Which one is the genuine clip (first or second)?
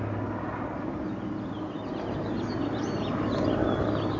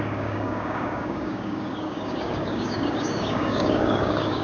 first